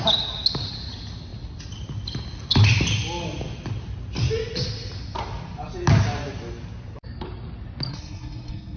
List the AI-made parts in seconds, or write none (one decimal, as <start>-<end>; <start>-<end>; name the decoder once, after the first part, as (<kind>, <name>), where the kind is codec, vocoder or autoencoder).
7.9-8.8 (codec, SNAC)